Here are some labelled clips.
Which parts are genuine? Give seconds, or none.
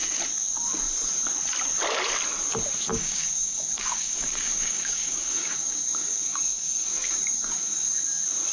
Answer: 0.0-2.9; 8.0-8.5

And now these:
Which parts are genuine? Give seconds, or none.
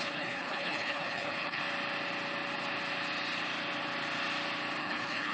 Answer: 1.6-4.8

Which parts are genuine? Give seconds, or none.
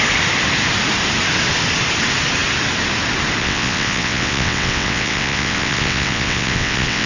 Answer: 0.0-3.4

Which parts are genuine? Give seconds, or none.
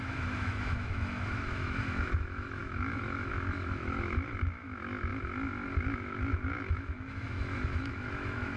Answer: 5.1-5.8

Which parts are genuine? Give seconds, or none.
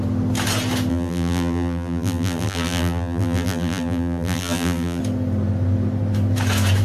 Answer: 0.0-0.9; 5.0-6.8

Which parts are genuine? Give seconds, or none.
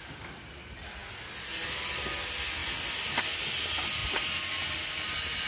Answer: 0.0-5.5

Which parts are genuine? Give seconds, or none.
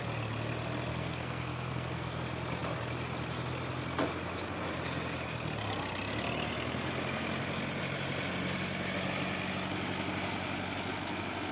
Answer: 0.0-0.9; 2.2-11.5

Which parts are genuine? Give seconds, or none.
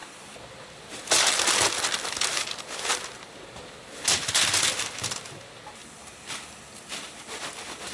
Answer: 0.0-7.9